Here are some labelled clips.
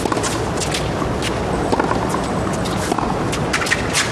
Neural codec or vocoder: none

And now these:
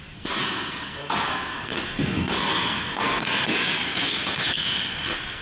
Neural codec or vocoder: codec, SNAC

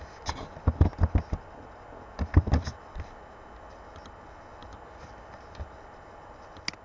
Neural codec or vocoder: none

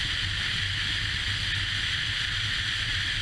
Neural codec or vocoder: none